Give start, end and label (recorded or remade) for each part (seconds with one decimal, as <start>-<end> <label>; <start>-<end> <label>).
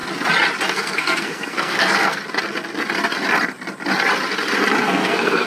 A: 0.0-0.7 recorded; 0.7-2.2 remade; 2.2-4.8 recorded; 4.8-5.5 remade